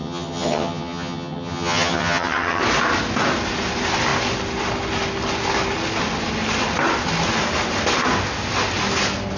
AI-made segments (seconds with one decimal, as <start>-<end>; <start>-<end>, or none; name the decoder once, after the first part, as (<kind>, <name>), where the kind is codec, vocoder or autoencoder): 0.0-2.6 (vocoder, HiFi-GAN)